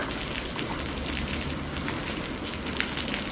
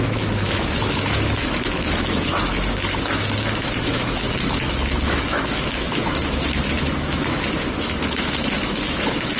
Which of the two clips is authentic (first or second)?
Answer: first